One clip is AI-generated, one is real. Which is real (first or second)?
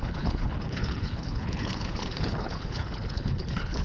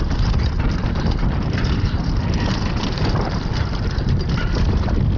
second